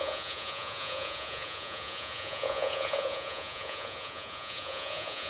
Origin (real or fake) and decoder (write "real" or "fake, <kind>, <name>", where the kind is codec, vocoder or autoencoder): fake, vocoder, Vocos